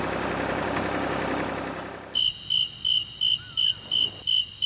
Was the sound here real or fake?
real